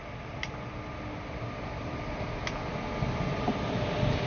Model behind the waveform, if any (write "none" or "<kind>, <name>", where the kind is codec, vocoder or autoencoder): none